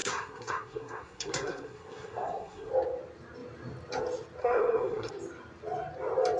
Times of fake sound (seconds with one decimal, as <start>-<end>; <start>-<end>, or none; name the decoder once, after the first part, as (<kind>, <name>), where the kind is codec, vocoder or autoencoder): 0.0-2.7 (codec, SNAC); 4.4-5.1